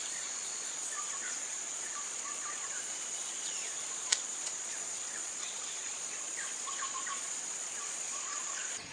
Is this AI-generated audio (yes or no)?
yes